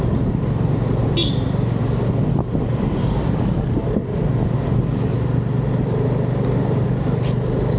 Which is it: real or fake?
real